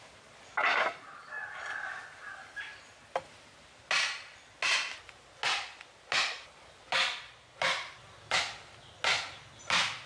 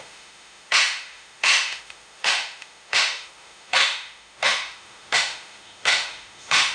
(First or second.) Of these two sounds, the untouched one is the first